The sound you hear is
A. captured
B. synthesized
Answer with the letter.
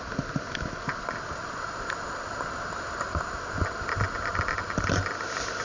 A